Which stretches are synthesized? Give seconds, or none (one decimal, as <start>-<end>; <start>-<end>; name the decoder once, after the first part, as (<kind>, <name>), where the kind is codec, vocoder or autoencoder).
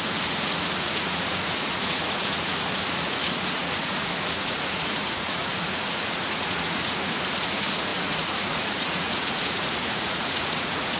0.0-11.0 (vocoder, Vocos)